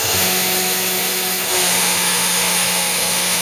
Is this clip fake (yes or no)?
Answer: yes